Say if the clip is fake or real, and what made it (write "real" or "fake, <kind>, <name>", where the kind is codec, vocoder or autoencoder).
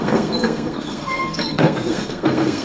fake, codec, SNAC